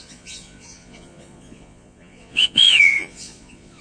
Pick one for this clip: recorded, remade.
remade